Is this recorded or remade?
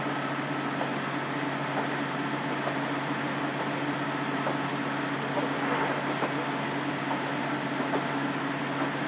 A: recorded